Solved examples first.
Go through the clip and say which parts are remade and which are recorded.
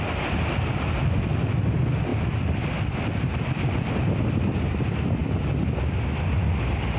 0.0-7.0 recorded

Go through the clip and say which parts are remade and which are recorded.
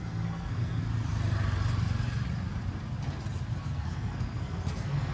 0.0-0.8 remade; 0.8-3.6 recorded; 3.6-5.1 remade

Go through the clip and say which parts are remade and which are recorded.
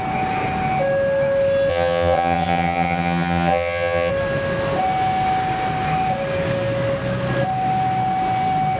0.0-1.7 recorded; 1.7-4.1 remade; 4.1-8.8 recorded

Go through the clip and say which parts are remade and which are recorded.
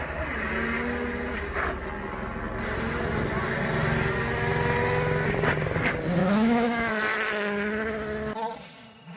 0.0-6.2 recorded; 6.2-6.9 remade; 6.9-9.2 recorded